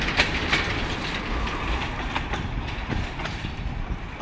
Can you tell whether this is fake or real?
fake